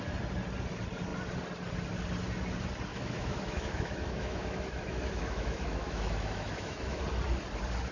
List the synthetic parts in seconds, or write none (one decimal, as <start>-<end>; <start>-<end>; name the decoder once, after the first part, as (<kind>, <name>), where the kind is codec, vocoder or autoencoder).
2.9-7.0 (autoencoder, DAC-VAE)